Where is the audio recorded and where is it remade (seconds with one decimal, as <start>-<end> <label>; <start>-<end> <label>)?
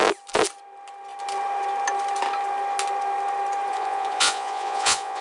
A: 0.0-3.7 recorded; 3.7-5.2 remade